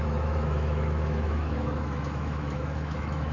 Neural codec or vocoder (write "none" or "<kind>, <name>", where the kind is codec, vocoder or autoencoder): autoencoder, DAC-VAE